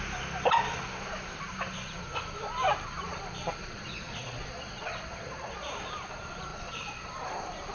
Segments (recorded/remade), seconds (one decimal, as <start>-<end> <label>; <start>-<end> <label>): 0.0-3.6 recorded; 3.6-5.7 remade; 5.7-6.5 recorded; 6.5-7.1 remade; 7.1-7.7 recorded